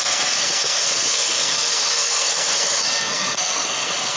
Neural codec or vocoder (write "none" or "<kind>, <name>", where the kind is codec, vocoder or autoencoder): codec, SNAC